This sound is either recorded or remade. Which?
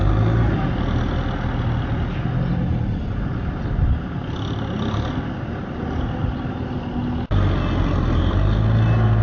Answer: recorded